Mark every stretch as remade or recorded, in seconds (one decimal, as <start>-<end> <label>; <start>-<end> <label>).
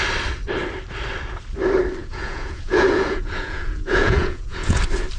0.0-2.0 recorded; 2.0-4.8 remade; 4.8-5.2 recorded